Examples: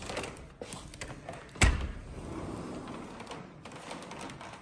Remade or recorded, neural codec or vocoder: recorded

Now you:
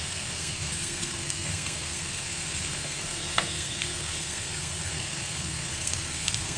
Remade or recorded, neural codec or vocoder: remade, codec, SNAC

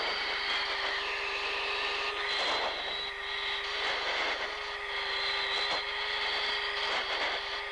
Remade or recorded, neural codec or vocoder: recorded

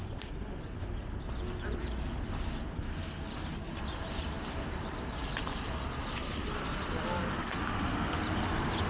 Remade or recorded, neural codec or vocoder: recorded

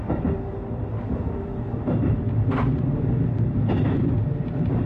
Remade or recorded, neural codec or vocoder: recorded